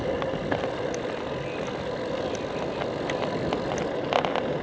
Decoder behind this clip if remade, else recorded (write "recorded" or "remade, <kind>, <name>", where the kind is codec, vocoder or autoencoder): recorded